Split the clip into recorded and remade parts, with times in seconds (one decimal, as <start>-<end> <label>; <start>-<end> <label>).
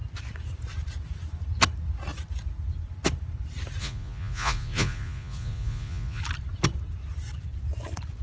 0.0-3.8 recorded; 3.8-6.2 remade; 6.2-8.2 recorded